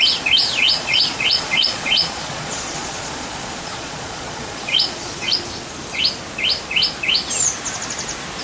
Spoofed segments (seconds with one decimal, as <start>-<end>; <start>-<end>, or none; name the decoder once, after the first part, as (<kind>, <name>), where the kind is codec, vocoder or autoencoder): 0.5-5.3 (vocoder, Vocos)